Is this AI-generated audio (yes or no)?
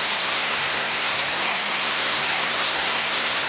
yes